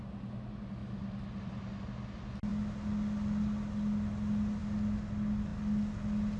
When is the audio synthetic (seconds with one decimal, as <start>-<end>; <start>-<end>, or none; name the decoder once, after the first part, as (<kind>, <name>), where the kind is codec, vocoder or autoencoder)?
0.8-1.8 (vocoder, BigVGAN v2)